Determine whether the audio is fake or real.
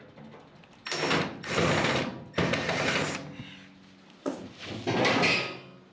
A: real